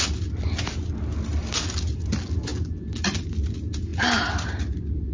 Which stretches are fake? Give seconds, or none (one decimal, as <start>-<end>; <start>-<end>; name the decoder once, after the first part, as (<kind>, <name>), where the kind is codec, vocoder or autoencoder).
1.3-1.9 (vocoder, BigVGAN v2); 3.9-5.1